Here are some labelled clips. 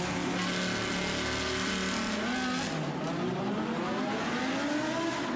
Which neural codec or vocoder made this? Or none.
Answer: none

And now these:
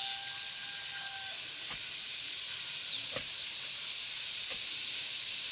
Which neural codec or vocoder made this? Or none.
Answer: none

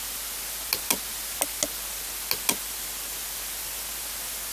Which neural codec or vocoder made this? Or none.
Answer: none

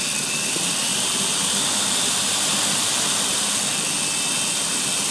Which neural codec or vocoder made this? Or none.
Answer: none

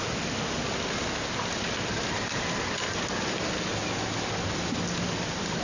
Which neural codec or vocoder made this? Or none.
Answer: none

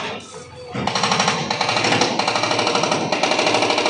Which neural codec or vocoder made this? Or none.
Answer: none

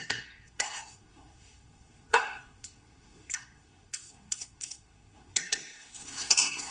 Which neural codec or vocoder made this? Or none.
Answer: codec, SNAC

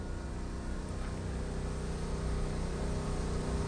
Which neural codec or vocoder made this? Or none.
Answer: none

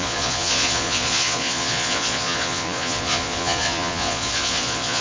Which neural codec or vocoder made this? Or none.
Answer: vocoder, Vocos